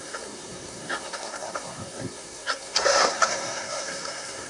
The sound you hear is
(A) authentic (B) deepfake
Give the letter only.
B